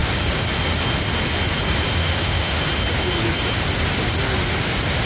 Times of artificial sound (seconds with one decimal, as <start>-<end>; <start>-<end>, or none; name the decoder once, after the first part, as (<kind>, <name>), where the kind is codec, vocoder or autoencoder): 2.0-2.6 (autoencoder, DAC-VAE)